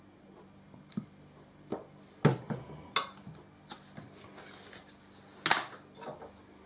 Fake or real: real